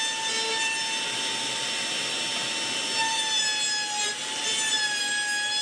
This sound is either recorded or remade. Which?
recorded